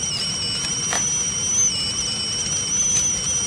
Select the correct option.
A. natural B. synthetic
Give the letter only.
A